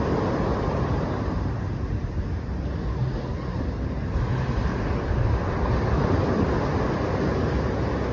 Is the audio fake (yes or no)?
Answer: no